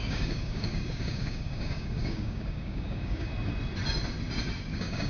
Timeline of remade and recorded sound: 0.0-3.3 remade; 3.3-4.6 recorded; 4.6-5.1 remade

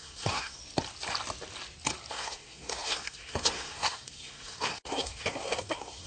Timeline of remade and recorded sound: 0.0-0.6 remade; 0.6-2.1 recorded; 2.1-6.1 remade

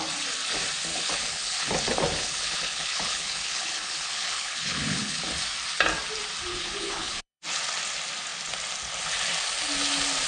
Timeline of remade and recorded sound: 0.0-0.9 recorded; 0.9-1.7 remade; 1.7-2.2 recorded; 2.2-5.2 remade; 5.2-6.5 recorded; 6.5-7.4 remade; 7.4-10.3 recorded

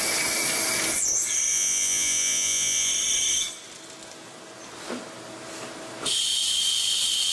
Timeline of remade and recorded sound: 0.0-1.5 recorded; 1.5-2.9 remade; 2.9-7.3 recorded